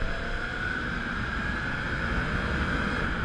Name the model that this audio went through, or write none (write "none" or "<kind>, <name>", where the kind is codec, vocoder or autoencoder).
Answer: vocoder, BigVGAN v2